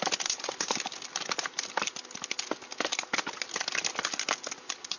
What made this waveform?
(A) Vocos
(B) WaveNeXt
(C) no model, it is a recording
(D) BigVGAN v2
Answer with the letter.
C